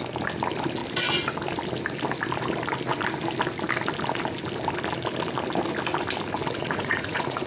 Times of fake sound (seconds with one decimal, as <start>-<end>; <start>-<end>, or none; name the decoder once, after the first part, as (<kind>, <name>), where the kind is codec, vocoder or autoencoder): 6.6-7.5 (vocoder, Vocos)